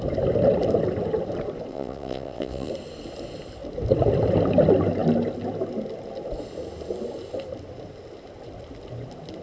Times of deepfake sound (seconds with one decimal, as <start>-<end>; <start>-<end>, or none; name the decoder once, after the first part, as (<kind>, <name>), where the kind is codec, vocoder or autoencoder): 1.7-2.7 (vocoder, WaveNeXt)